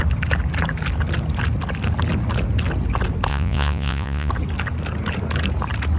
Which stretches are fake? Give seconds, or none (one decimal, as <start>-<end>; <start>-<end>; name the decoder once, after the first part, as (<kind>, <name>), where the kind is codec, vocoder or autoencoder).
3.3-4.3 (vocoder, Vocos)